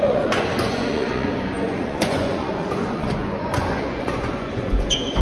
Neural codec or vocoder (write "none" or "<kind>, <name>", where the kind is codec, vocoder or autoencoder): vocoder, Vocos